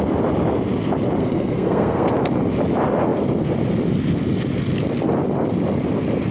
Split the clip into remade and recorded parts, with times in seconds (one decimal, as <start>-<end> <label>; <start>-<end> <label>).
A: 0.0-1.2 recorded; 1.2-2.1 remade; 2.1-6.3 recorded

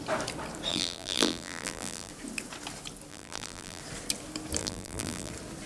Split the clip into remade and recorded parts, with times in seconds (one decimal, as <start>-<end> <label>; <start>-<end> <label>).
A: 0.0-0.7 recorded; 0.7-2.1 remade; 2.1-3.1 recorded; 3.1-3.8 remade; 3.8-4.6 recorded; 4.6-5.3 remade; 5.3-5.7 recorded

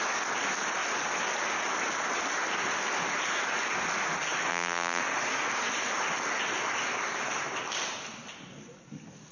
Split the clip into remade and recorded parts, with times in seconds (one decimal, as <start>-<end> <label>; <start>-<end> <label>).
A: 0.0-4.5 recorded; 4.5-5.0 remade; 5.0-9.3 recorded

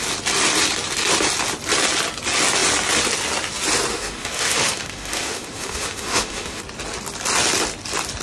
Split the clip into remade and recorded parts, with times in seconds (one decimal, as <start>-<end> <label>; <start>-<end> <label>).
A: 0.0-3.9 recorded; 3.9-6.6 remade; 6.6-8.2 recorded

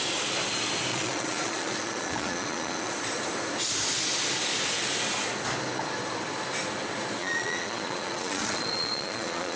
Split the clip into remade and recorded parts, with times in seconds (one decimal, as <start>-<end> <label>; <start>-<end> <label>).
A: 0.0-0.9 recorded; 0.9-2.9 remade; 2.9-7.2 recorded; 7.2-9.6 remade

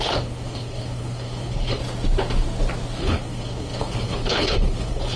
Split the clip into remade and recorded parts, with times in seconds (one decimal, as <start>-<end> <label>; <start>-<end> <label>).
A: 0.0-1.8 remade; 1.8-3.0 recorded; 3.0-5.2 remade